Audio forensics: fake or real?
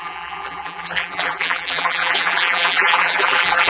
fake